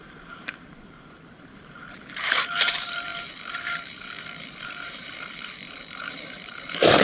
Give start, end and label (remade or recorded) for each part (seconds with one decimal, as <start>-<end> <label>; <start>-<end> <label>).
0.0-7.0 remade